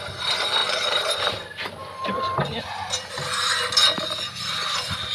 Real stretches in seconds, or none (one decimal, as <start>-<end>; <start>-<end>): 3.8-4.4

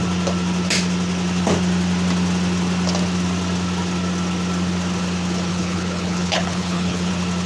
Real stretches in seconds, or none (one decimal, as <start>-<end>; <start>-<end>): 0.0-5.5; 7.1-7.5

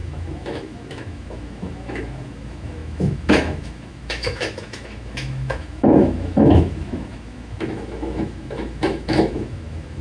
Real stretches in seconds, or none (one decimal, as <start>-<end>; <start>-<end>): none

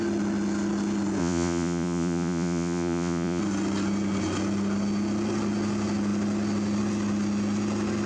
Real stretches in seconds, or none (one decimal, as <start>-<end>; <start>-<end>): 0.0-1.2; 3.4-8.1

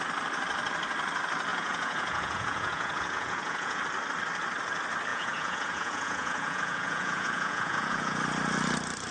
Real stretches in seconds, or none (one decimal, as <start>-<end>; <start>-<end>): 0.0-1.5; 3.8-5.1; 8.2-9.1

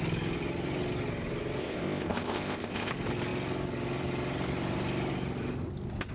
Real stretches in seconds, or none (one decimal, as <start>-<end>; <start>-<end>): 0.0-1.6; 2.9-6.1